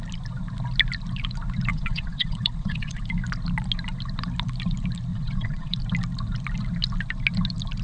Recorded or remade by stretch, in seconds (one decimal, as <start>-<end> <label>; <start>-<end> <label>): 0.0-1.7 recorded; 1.7-3.0 remade; 3.0-5.1 recorded; 5.1-5.8 remade; 5.8-7.8 recorded